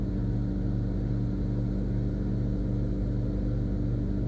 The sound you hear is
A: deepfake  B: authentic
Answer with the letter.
B